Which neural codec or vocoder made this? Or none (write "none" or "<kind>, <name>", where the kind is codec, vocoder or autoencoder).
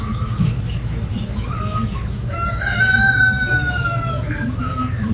autoencoder, DAC-VAE